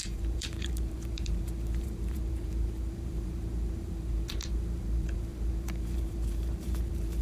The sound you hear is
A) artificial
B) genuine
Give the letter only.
A